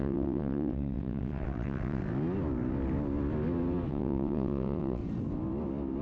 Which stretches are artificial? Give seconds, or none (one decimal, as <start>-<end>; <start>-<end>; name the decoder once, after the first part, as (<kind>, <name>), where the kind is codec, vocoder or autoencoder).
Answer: 0.0-2.0 (vocoder, WaveNeXt); 3.9-5.0

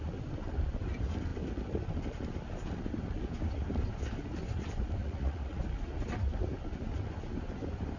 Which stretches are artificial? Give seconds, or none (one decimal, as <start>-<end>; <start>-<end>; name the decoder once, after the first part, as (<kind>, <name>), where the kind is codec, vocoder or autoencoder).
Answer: 5.0-5.6 (vocoder, Vocos)

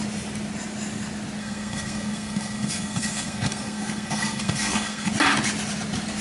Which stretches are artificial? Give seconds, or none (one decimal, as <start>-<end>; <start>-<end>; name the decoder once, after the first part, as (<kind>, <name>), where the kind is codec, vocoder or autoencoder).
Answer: 1.4-5.1 (codec, SNAC)

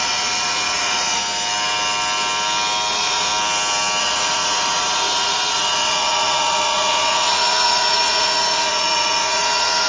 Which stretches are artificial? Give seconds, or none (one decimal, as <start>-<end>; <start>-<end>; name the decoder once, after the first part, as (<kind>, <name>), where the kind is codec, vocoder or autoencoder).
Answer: 0.0-1.2 (vocoder, Vocos); 2.9-3.3; 4.0-9.9

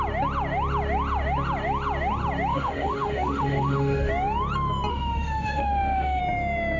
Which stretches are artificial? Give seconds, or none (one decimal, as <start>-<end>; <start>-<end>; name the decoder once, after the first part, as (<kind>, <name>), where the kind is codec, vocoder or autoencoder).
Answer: 2.5-4.1 (autoencoder, DAC-VAE); 4.9-6.2

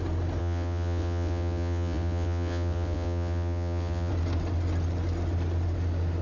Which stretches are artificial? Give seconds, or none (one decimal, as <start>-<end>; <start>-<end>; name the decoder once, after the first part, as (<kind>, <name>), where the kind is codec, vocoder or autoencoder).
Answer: 0.4-4.1 (vocoder, WaveNeXt)

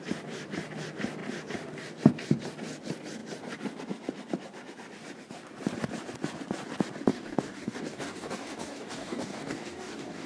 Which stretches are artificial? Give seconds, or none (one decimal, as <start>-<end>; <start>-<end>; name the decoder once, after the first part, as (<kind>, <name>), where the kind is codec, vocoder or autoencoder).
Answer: 7.1-10.3 (codec, DAC)

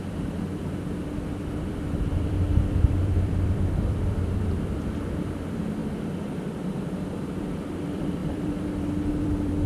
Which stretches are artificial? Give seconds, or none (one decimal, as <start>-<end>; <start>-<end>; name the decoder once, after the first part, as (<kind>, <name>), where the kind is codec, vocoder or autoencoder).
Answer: 0.0-5.8 (vocoder, BigVGAN v2); 6.5-9.7